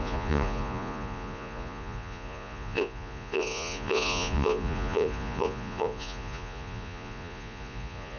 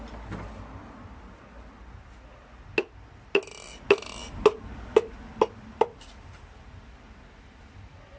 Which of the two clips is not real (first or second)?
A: first